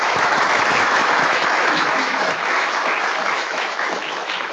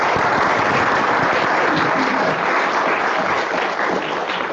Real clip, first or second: second